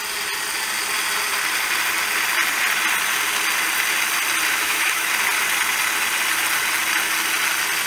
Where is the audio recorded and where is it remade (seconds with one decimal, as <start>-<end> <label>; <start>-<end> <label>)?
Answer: 0.0-4.5 recorded; 4.5-5.1 remade; 5.1-7.9 recorded